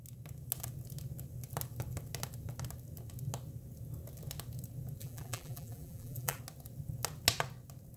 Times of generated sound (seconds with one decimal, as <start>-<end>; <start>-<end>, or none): 5.0-6.4